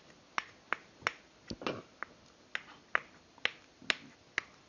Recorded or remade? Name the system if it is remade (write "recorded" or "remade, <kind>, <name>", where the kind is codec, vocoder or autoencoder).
recorded